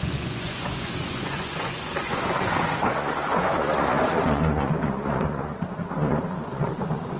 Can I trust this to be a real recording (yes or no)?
no